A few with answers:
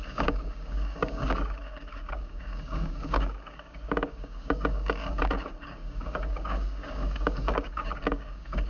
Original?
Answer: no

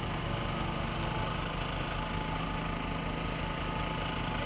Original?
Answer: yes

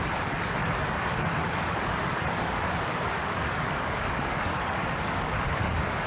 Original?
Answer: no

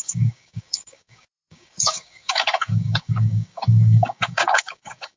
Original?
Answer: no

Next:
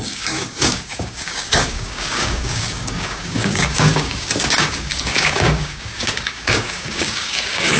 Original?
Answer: no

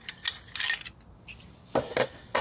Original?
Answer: yes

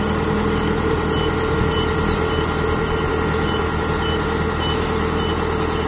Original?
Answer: yes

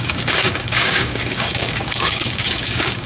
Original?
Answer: no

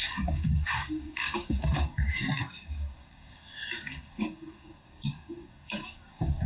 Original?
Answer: no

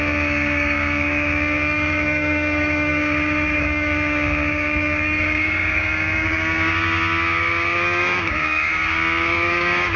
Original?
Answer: no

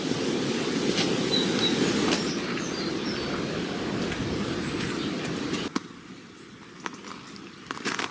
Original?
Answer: yes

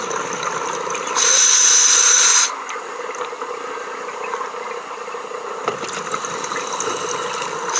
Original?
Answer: yes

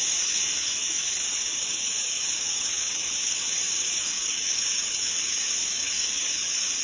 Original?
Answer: no